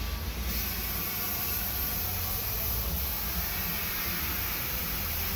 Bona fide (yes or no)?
no